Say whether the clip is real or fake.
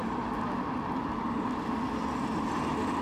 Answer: real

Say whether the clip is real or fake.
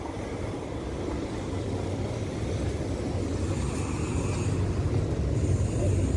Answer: real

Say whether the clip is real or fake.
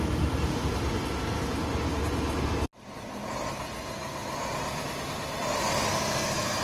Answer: real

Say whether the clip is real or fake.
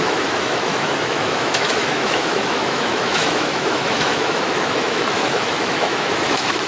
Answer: fake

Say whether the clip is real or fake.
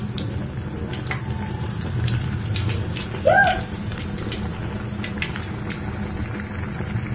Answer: real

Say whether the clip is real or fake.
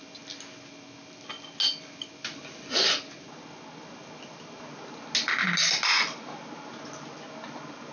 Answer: real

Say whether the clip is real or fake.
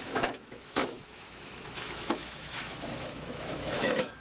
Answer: fake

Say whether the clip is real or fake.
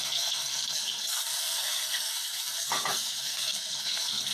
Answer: fake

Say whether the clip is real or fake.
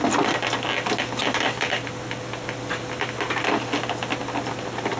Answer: real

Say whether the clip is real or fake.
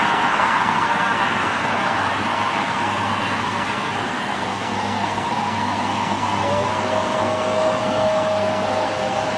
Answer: fake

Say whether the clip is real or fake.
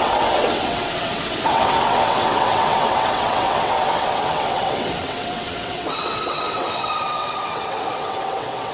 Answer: fake